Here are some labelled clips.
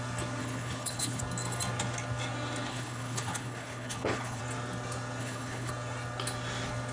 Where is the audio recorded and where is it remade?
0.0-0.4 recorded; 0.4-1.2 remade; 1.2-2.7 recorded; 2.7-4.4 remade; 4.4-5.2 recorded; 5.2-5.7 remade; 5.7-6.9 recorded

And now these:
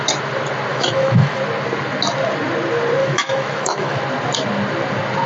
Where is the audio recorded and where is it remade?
0.0-0.7 recorded; 0.7-1.4 remade; 1.4-3.0 recorded; 3.0-4.0 remade; 4.0-5.3 recorded

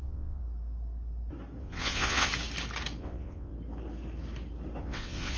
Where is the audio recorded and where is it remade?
0.0-0.4 remade; 0.4-1.6 recorded; 1.6-2.3 remade; 2.3-3.0 recorded; 3.0-3.5 remade; 3.5-4.8 recorded; 4.8-5.4 remade

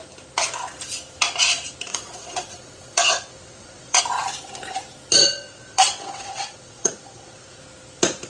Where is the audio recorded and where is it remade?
0.0-1.9 recorded; 1.9-4.0 remade; 4.0-5.2 recorded; 5.2-7.6 remade; 7.6-8.3 recorded

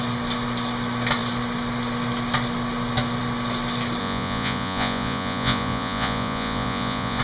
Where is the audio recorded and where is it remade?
0.0-4.0 recorded; 4.0-7.2 remade